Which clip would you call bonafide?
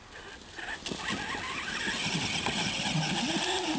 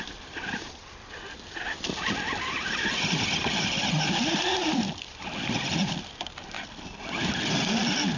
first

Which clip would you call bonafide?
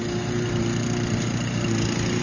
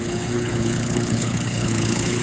first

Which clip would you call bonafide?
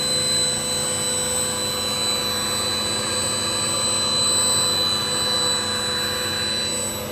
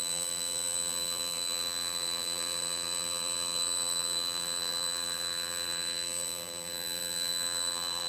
first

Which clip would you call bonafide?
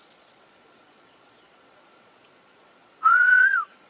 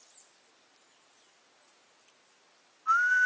second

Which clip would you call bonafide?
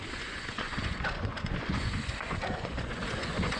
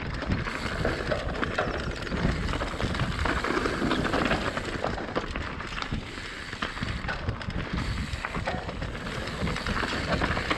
second